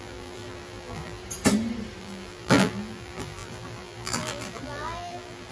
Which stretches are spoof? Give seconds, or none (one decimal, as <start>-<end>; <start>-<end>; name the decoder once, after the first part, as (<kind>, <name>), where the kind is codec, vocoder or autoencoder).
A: 0.0-1.2 (vocoder, BigVGAN v2); 2.0-5.5

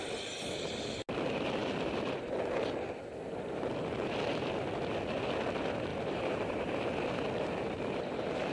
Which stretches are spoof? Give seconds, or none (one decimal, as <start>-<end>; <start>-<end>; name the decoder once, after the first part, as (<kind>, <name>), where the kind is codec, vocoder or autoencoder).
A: 5.9-6.7 (vocoder, BigVGAN v2)

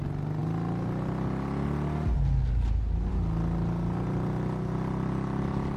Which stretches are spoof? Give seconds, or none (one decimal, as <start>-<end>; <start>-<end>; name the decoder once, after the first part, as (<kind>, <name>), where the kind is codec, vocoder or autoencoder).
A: none

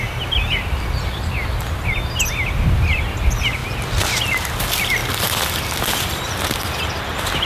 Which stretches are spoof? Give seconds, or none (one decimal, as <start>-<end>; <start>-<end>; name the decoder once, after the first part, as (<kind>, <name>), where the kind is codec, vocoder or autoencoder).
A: none